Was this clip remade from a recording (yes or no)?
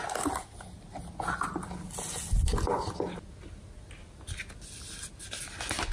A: no